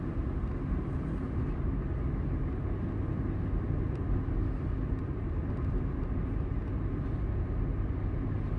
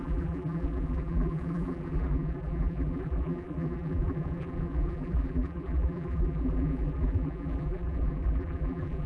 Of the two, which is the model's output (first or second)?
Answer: second